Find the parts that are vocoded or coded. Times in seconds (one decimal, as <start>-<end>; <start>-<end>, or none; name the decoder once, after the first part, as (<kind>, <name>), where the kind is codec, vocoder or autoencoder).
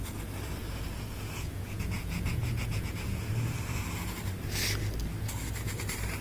0.6-3.3 (vocoder, Vocos)